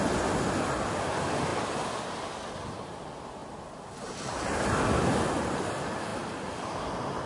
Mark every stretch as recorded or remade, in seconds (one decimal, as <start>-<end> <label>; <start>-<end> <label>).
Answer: 0.0-7.3 recorded